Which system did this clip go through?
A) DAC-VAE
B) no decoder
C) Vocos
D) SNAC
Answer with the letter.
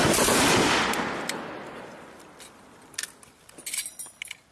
B